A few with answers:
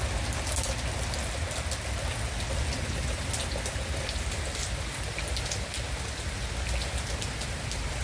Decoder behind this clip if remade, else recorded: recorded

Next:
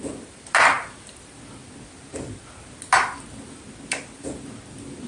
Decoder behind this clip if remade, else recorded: recorded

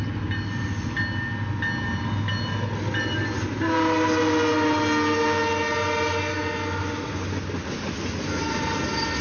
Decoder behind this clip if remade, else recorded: recorded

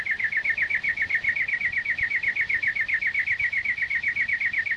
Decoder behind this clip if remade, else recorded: recorded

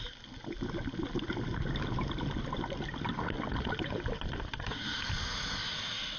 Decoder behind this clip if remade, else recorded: recorded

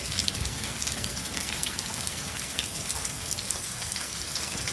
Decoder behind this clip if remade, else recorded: remade, codec, SNAC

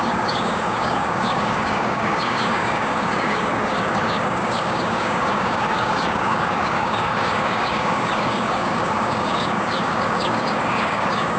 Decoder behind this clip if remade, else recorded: remade, codec, DAC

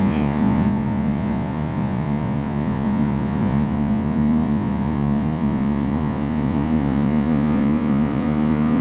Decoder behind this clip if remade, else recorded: remade, vocoder, Vocos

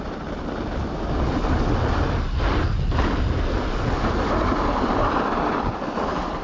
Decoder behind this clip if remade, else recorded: recorded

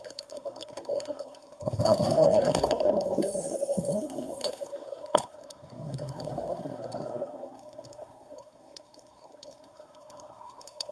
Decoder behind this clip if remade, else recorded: remade, codec, SNAC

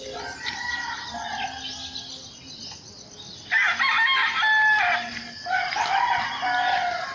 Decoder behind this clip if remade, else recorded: recorded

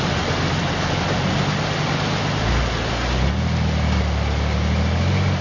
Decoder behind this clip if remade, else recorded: recorded